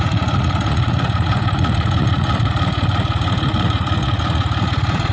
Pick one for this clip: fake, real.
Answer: fake